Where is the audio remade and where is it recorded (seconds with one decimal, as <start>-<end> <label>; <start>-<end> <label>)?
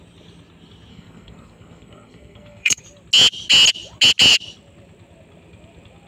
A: 0.0-0.9 recorded; 0.9-2.8 remade; 2.8-6.1 recorded